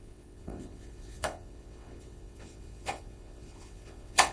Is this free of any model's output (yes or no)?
no